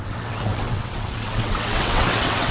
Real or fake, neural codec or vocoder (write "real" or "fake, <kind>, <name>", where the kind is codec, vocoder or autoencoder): fake, vocoder, WaveNeXt